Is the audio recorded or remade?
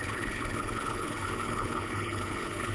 remade